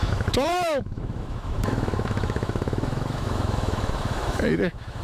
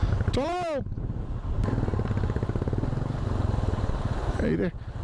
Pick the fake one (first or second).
first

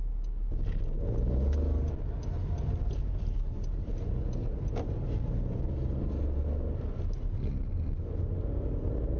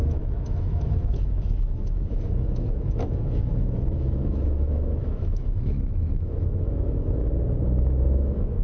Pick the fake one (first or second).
second